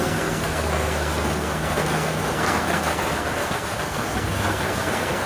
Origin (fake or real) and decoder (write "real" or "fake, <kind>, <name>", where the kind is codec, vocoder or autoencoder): fake, codec, SNAC